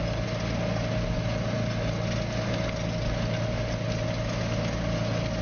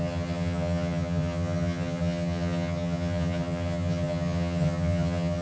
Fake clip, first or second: second